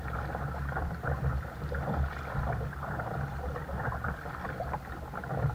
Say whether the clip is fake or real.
real